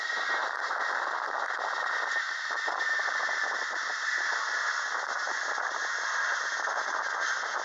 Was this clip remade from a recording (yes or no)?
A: no